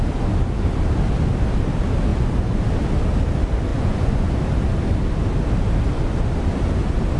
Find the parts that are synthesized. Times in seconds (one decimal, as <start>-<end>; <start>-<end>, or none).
2.1-2.6; 3.7-4.4